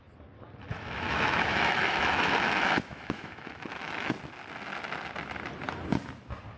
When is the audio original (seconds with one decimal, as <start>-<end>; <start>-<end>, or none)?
0.0-0.7; 4.1-6.6